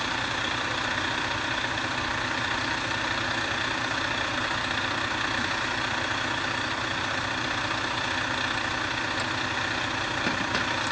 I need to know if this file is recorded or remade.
recorded